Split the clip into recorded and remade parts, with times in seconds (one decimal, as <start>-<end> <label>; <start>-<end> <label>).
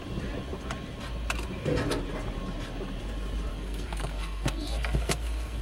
0.0-3.5 recorded; 3.5-5.6 remade